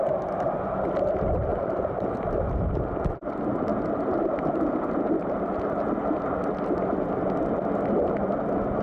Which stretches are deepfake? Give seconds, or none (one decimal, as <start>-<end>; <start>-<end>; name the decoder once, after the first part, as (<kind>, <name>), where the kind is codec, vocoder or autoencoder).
none